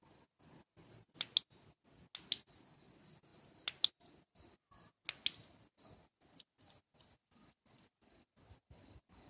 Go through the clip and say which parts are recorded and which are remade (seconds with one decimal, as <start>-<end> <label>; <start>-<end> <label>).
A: 0.0-9.3 recorded